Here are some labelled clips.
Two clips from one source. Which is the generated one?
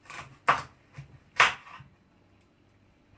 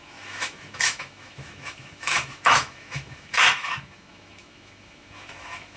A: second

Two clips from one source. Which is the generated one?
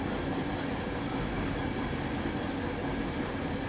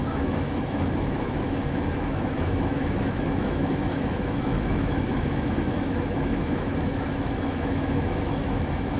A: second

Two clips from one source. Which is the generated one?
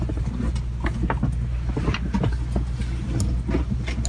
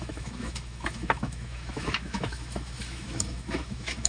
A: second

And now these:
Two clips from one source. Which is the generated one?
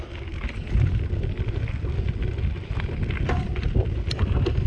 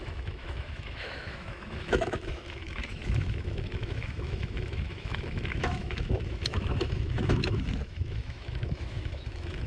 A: second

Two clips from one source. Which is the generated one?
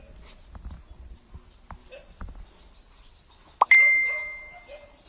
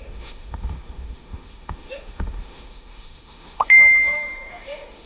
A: second